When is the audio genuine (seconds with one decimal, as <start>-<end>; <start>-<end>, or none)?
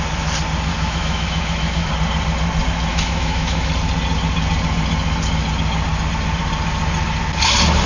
0.0-0.7; 1.9-2.9; 3.7-7.9